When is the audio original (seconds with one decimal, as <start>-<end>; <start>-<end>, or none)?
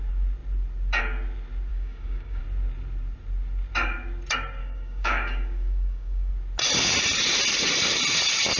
0.0-1.7; 2.4-4.6; 6.3-8.6